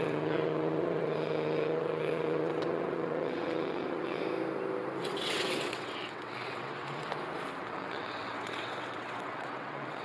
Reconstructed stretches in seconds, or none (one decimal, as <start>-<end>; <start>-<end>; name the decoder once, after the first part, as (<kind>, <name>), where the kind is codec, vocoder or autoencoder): 0.0-4.2 (vocoder, WaveNeXt); 5.0-7.1; 7.6-10.0